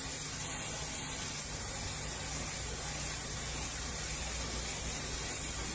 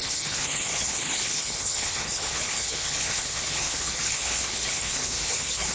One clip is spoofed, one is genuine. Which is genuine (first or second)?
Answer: first